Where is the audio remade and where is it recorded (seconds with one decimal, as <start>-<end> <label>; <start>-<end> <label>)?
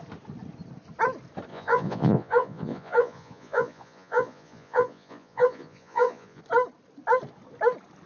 0.0-1.5 recorded; 1.5-6.4 remade; 6.4-8.1 recorded